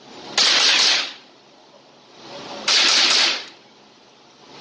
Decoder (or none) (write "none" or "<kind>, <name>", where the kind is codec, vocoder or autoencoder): none